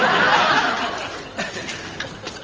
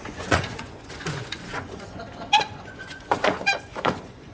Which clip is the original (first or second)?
first